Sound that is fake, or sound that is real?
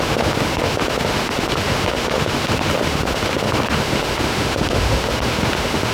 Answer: fake